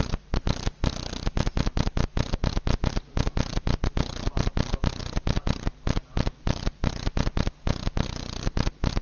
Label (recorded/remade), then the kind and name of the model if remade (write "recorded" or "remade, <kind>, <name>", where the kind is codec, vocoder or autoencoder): recorded